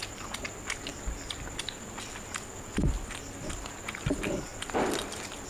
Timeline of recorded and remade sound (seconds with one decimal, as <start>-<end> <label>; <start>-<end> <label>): 0.0-5.5 recorded